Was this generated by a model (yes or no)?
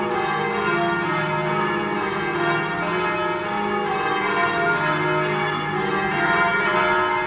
no